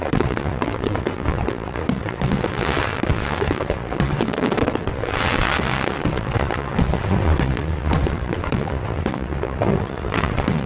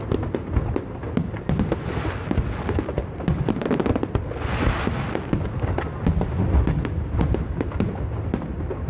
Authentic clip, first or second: second